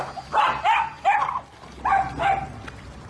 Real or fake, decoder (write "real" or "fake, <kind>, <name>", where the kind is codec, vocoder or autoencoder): real